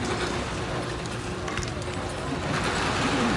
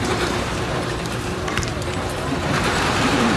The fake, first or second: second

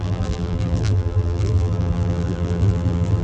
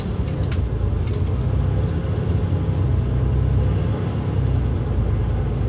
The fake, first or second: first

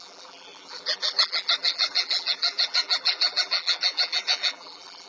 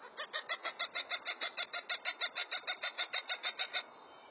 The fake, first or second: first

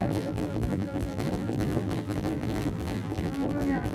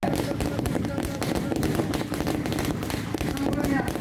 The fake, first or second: first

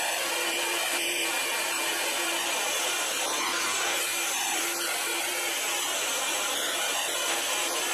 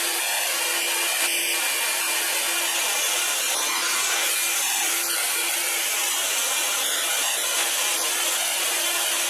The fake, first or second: first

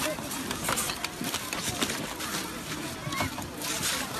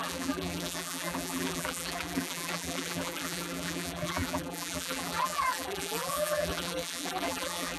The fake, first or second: second